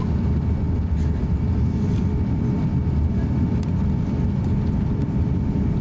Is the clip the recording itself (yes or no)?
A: yes